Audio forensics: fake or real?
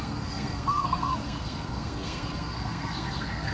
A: fake